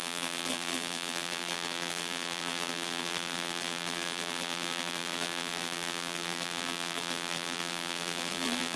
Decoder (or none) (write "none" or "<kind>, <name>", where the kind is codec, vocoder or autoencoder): vocoder, BigVGAN v2